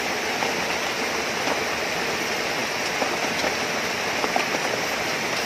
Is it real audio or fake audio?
real